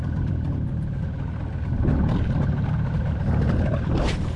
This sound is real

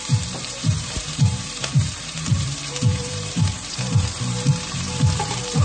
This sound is fake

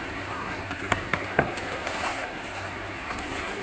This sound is fake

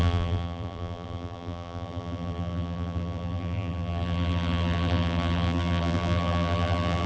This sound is fake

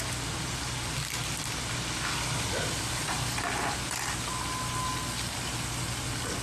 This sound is real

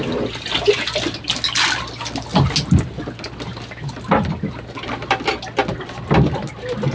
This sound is real